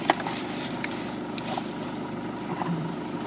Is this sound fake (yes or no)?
yes